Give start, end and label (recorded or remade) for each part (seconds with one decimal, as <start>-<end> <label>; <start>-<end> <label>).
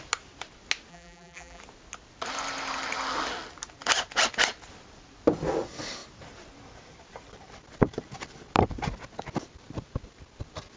0.0-0.9 recorded; 0.9-1.6 remade; 1.6-10.8 recorded